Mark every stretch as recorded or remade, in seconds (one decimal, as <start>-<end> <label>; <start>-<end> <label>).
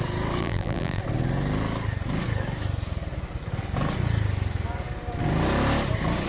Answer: 0.0-0.4 recorded; 0.4-1.0 remade; 1.0-6.3 recorded